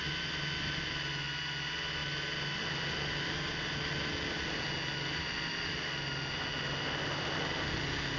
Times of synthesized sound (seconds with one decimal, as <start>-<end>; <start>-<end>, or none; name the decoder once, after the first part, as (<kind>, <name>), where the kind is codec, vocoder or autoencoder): none